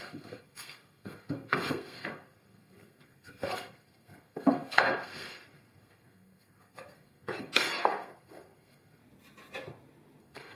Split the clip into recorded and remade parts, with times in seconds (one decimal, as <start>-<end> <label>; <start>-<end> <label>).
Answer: 0.0-9.0 remade; 9.0-10.2 recorded; 10.2-10.6 remade